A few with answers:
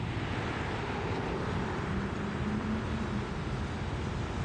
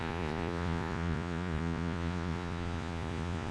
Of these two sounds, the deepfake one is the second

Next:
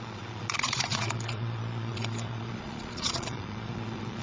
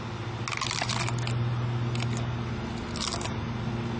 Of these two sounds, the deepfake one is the first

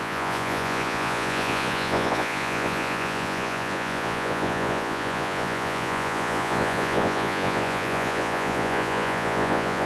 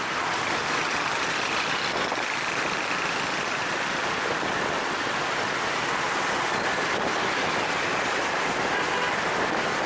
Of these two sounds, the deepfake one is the first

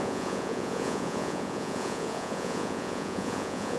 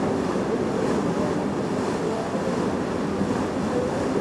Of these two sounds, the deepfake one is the first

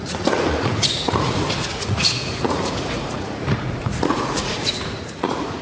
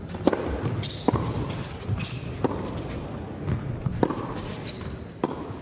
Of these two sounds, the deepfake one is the first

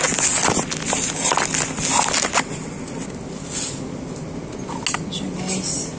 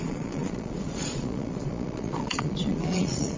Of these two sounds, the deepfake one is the second